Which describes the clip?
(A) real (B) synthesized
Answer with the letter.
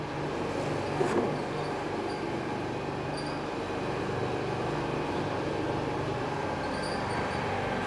A